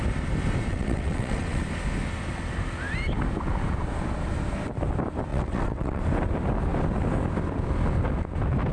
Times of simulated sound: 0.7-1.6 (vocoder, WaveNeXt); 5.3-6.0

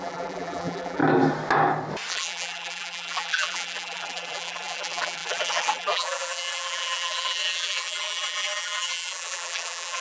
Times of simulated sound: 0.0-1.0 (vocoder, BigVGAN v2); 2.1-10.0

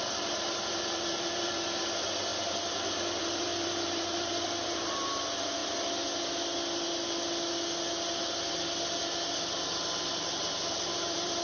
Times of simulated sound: 0.0-2.3 (vocoder, BigVGAN v2); 3.2-5.6; 10.7-11.4

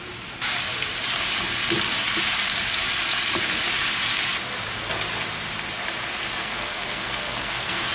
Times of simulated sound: 6.4-7.9 (codec, SNAC)